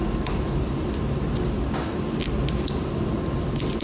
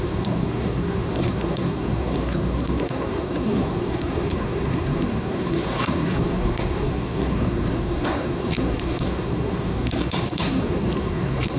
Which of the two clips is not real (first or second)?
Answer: second